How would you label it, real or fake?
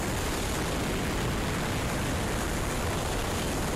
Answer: real